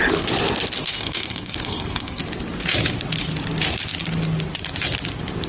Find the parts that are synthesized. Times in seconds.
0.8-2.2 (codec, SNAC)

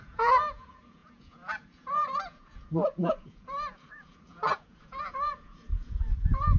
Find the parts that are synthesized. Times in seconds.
0.0-6.6 (vocoder, Vocos)